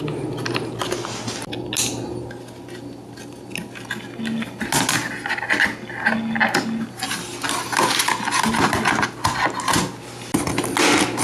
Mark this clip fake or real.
real